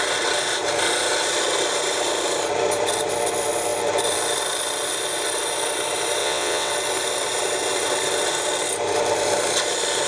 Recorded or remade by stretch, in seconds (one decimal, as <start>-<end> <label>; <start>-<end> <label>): 0.0-6.2 recorded; 6.2-6.7 remade; 6.7-10.1 recorded